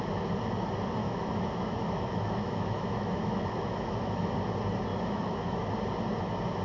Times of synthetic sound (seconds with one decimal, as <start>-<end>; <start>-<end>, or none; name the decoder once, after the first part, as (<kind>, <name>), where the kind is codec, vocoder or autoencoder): 1.0-4.3 (autoencoder, DAC-VAE); 4.9-5.7